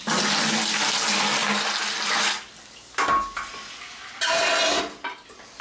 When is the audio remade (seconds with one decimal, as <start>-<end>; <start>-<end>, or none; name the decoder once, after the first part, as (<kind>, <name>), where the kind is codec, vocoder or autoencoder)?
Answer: none